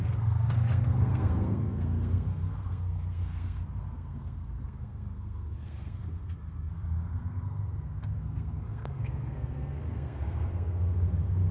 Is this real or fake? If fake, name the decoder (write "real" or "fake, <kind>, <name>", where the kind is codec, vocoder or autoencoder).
fake, codec, SNAC